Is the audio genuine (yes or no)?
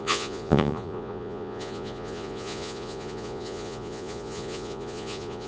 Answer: no